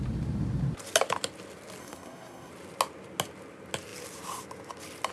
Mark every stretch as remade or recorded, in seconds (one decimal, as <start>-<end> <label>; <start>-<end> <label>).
0.0-1.8 recorded; 1.8-2.5 remade; 2.5-5.1 recorded